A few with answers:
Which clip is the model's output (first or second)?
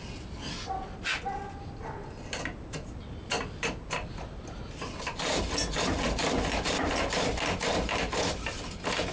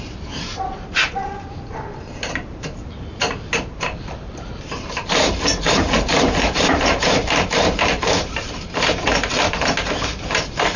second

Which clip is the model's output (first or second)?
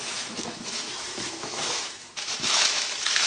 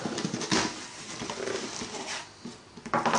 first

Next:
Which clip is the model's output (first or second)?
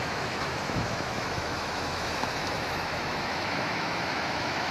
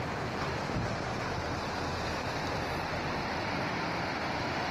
first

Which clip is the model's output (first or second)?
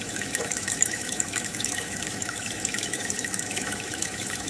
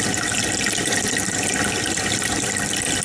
first